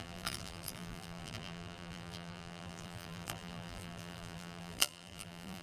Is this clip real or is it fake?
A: fake